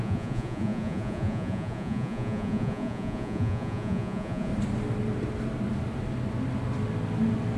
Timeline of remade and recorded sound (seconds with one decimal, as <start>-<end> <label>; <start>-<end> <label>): 0.0-4.5 remade; 4.5-7.6 recorded